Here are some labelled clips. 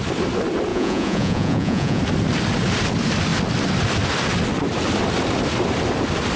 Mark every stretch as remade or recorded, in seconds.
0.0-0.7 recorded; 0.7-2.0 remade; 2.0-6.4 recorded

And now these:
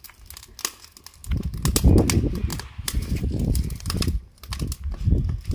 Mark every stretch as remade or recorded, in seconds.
0.0-2.5 recorded; 2.5-4.2 remade; 4.2-5.5 recorded

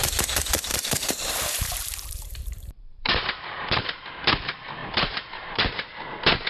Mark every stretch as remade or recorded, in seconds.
0.0-0.7 recorded; 0.7-3.8 remade; 3.8-4.8 recorded; 4.8-6.0 remade; 6.0-6.5 recorded

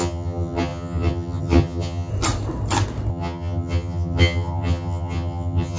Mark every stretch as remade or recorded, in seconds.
0.0-2.1 remade; 2.1-3.1 recorded; 3.1-5.8 remade

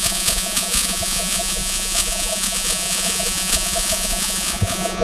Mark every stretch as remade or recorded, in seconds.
0.0-5.0 remade

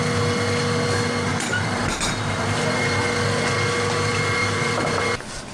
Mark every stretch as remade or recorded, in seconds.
0.0-1.3 recorded; 1.3-2.8 remade; 2.8-4.4 recorded; 4.4-5.0 remade; 5.0-5.5 recorded

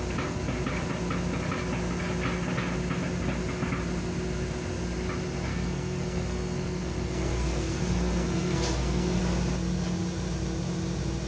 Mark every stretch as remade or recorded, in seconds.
0.0-5.5 recorded; 5.5-9.2 remade; 9.2-11.3 recorded